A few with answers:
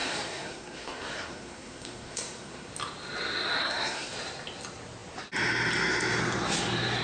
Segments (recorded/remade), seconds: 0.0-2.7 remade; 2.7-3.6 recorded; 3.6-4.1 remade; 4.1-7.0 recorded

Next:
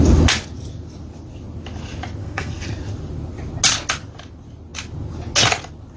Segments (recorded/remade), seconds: 0.0-2.2 recorded; 2.2-2.7 remade; 2.7-6.0 recorded

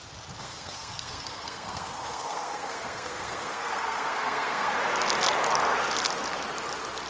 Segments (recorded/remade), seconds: 0.0-0.4 recorded; 0.4-4.7 remade; 4.7-7.1 recorded